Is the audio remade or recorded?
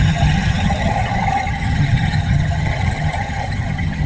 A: remade